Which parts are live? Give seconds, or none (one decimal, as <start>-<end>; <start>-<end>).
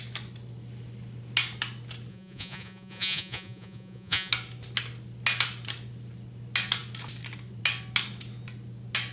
0.0-2.1; 4.3-9.1